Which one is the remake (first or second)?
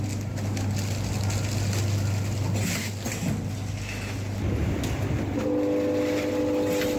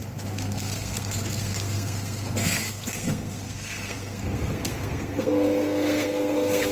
second